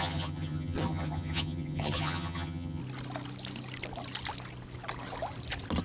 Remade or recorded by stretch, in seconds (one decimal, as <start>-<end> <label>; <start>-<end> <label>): 0.0-2.8 remade; 2.8-5.8 recorded